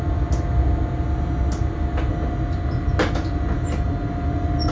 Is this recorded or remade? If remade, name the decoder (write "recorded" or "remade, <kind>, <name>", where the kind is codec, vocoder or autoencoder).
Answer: recorded